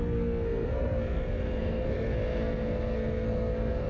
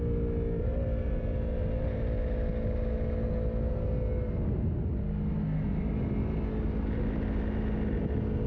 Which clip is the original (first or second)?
second